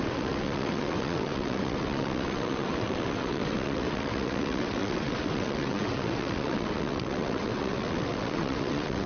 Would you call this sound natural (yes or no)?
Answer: no